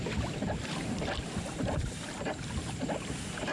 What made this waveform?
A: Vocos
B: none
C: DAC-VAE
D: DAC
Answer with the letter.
B